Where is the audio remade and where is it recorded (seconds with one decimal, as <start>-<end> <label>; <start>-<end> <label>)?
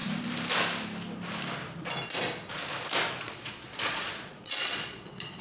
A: 0.0-3.2 recorded; 3.2-5.4 remade